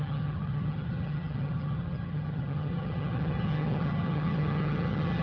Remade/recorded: remade